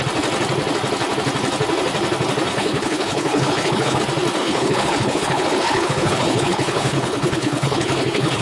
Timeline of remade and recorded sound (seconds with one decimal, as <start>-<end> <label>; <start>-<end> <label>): 0.0-2.5 recorded; 2.5-4.0 remade; 4.0-4.4 recorded; 4.4-8.4 remade